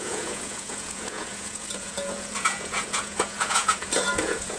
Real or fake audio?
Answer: fake